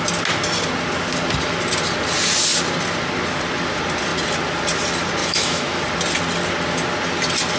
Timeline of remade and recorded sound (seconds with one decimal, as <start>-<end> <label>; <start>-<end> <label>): 0.0-5.2 recorded; 5.2-5.8 remade; 5.8-7.6 recorded